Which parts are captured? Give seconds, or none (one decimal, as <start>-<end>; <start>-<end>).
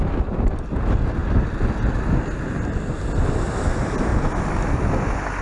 0.0-5.4